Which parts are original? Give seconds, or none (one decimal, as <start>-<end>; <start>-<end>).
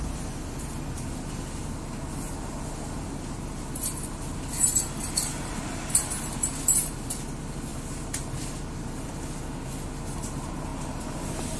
0.0-11.6